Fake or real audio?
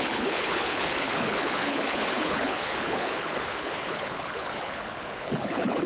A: fake